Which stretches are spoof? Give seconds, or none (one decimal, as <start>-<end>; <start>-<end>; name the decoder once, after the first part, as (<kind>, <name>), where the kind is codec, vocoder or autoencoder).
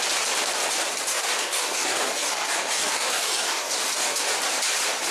1.1-4.2 (codec, DAC)